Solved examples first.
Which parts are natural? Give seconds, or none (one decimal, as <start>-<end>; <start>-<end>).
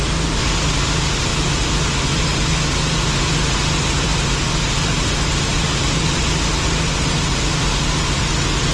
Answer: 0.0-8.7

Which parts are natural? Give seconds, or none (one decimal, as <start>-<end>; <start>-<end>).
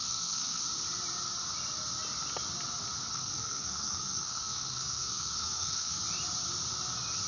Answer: 0.6-3.1; 6.0-7.3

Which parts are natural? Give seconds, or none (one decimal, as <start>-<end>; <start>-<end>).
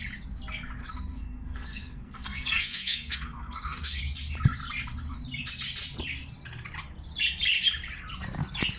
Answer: 0.0-0.8; 4.0-8.8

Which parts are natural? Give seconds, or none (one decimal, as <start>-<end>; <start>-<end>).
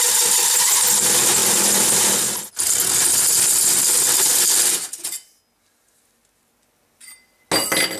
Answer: 0.0-8.0